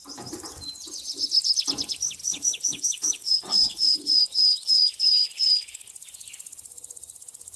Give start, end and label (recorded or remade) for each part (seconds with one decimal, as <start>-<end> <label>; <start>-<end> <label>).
0.0-2.2 recorded; 2.2-5.9 remade; 5.9-7.6 recorded